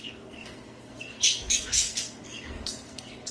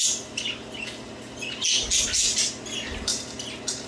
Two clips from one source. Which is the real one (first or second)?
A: second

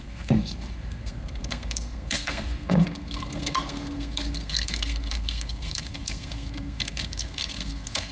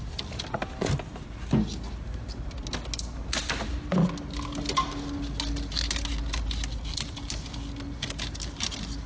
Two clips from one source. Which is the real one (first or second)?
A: second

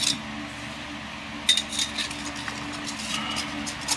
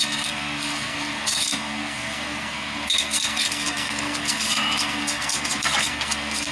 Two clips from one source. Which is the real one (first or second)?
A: first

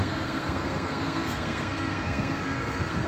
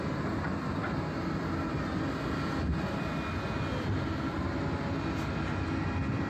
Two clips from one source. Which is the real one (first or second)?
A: second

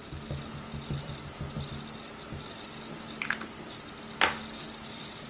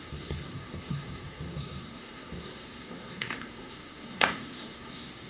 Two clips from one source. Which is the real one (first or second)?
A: first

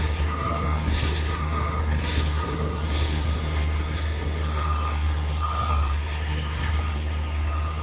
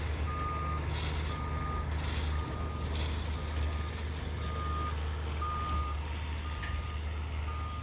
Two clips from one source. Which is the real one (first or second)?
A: second